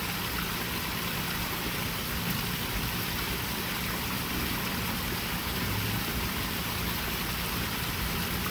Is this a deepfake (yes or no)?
yes